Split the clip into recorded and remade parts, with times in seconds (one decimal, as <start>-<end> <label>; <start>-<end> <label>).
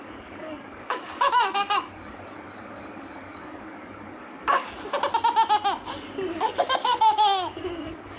0.0-4.6 remade; 4.6-6.4 recorded; 6.4-8.2 remade